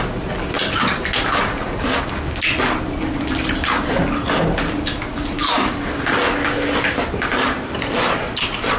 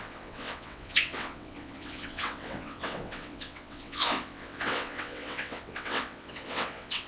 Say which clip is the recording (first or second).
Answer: first